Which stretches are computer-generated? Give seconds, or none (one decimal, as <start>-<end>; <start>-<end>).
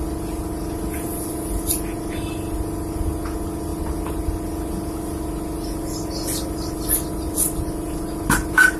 none